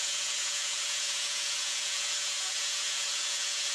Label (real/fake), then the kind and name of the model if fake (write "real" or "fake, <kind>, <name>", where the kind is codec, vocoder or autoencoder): fake, vocoder, Vocos